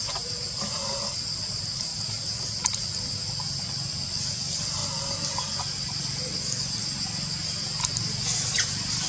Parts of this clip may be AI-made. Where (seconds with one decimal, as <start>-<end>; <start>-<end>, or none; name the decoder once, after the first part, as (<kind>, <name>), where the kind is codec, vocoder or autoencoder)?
none

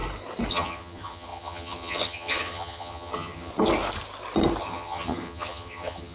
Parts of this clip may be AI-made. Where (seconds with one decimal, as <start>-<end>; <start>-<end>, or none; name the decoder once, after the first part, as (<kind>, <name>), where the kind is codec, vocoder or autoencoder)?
0.5-3.5 (vocoder, HiFi-GAN); 4.6-6.1

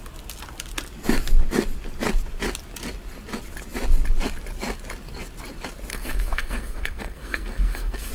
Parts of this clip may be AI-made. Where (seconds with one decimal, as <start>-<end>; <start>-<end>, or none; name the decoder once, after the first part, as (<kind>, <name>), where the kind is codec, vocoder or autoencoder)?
5.9-8.1 (codec, SNAC)

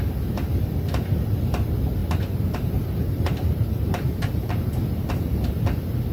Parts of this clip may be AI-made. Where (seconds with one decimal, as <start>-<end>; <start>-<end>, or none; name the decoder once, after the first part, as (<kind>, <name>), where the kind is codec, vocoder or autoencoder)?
2.0-5.6 (vocoder, BigVGAN v2)

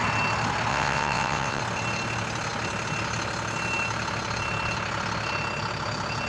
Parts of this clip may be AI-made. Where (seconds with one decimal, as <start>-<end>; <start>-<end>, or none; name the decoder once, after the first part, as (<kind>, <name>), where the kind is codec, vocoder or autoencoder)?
0.7-1.6 (vocoder, WaveNeXt)

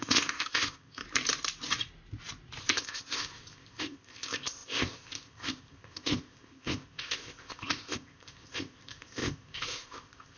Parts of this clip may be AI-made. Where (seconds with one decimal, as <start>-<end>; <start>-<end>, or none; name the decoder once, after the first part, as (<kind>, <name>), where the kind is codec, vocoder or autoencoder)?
0.0-1.0 (codec, ZipCodec); 2.6-10.4